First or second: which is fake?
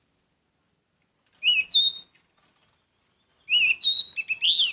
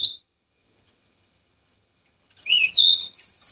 second